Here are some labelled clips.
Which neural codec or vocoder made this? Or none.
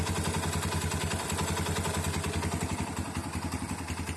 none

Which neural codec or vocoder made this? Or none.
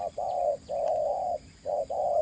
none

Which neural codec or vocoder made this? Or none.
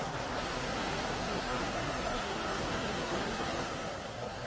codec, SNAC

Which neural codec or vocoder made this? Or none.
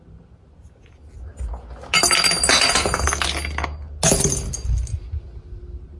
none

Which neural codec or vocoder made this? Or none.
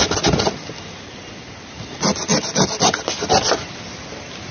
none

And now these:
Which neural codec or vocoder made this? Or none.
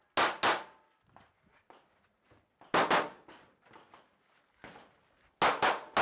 none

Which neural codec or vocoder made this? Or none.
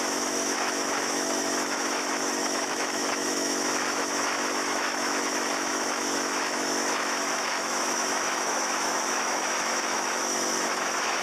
autoencoder, DAC-VAE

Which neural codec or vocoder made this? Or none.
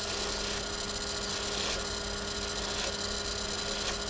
none